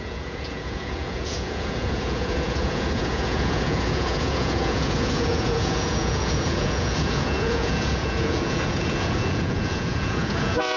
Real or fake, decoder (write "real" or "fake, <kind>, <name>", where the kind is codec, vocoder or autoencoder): fake, vocoder, Vocos